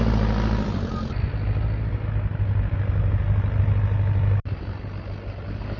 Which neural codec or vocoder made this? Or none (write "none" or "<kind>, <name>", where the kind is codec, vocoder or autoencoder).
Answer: none